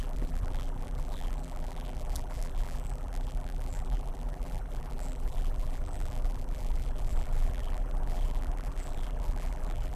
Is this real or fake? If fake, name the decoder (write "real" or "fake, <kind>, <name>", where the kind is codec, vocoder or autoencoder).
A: fake, vocoder, BigVGAN v2